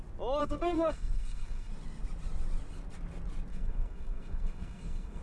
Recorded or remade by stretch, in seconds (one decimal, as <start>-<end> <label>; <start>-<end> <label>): 0.0-0.4 recorded; 0.4-1.7 remade; 1.7-3.5 recorded; 3.5-5.2 remade